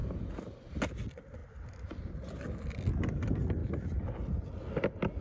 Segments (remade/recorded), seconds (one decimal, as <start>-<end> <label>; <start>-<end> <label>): 0.0-5.2 recorded